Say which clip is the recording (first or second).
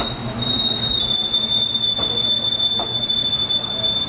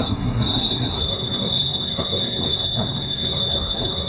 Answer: first